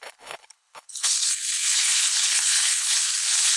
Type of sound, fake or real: fake